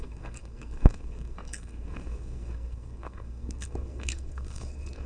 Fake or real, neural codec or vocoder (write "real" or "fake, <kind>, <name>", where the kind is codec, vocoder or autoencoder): fake, codec, SNAC